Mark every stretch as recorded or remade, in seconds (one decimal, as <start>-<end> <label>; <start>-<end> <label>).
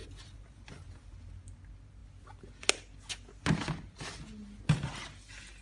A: 0.0-0.7 remade; 0.7-5.6 recorded